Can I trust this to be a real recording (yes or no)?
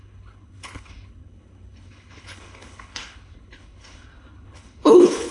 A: no